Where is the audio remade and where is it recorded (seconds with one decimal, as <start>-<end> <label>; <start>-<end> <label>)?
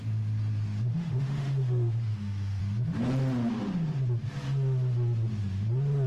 0.0-0.9 recorded; 0.9-2.6 remade; 2.6-6.1 recorded